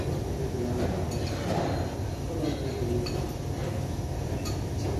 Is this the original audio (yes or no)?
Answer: yes